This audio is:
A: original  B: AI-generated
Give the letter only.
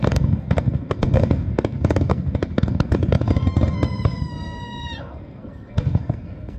B